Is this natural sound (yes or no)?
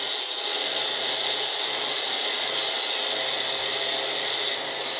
yes